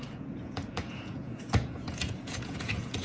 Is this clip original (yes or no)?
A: no